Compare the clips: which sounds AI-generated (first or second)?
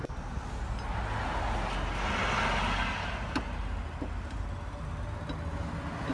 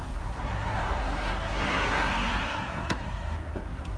second